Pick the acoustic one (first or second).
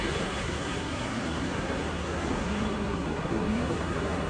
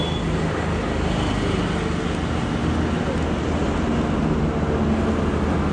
second